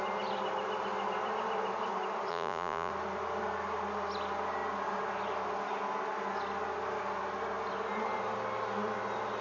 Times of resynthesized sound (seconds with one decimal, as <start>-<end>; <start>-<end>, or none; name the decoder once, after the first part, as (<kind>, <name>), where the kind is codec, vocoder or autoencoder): 2.3-2.9 (vocoder, Vocos)